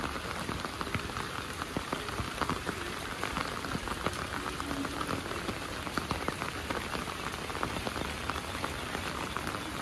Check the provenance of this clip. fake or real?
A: real